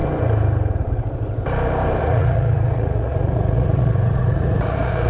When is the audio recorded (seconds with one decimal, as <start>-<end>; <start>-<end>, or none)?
0.0-2.0